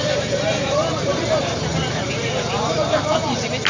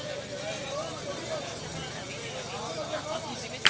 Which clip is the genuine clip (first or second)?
second